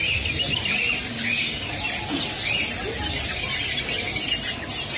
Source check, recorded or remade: recorded